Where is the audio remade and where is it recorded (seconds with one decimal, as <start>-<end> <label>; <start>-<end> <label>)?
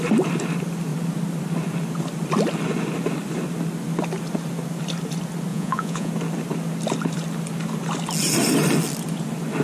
0.0-5.5 recorded; 5.5-6.1 remade; 6.1-9.6 recorded